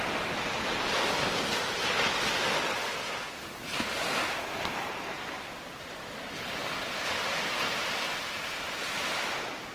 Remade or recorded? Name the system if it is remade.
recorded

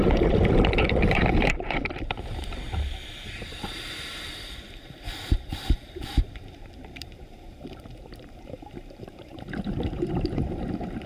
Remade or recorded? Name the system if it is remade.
remade, vocoder, BigVGAN v2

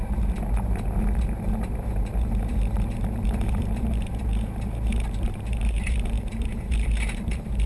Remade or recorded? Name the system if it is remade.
remade, vocoder, BigVGAN v2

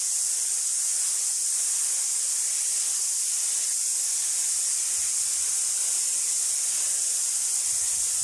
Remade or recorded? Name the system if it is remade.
recorded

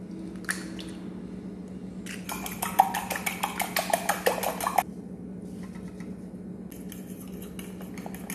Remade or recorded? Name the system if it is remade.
recorded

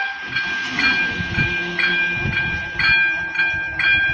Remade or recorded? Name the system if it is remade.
recorded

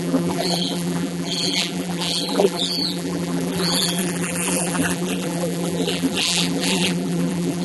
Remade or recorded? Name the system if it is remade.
remade, vocoder, BigVGAN v2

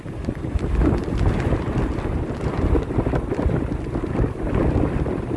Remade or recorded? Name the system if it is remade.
recorded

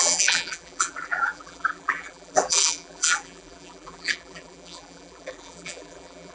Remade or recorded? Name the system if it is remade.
remade, vocoder, BigVGAN v2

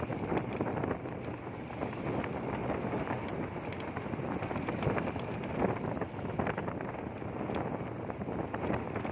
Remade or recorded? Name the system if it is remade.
recorded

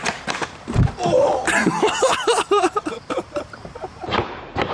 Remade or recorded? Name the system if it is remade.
remade, vocoder, BigVGAN v2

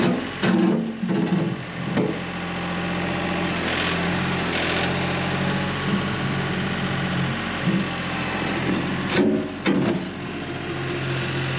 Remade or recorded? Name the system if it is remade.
recorded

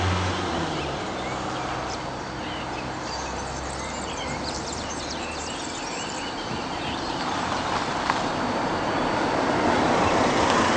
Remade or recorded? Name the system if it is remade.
remade, vocoder, BigVGAN v2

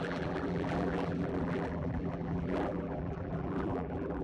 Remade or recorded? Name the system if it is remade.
remade, vocoder, BigVGAN v2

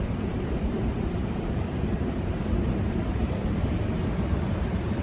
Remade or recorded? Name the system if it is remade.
remade, vocoder, BigVGAN v2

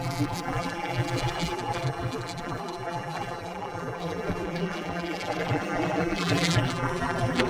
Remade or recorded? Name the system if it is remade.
remade, vocoder, BigVGAN v2